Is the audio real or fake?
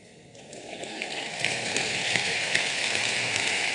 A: fake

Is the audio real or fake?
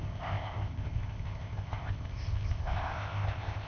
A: fake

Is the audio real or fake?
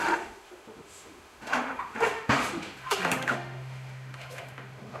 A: fake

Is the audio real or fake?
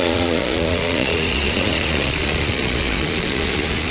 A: fake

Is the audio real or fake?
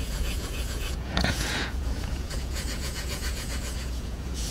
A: fake